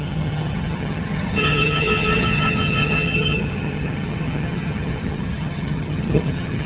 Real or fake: fake